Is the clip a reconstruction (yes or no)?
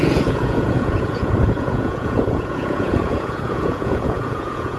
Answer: yes